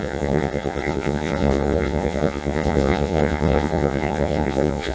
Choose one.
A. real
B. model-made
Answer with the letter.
B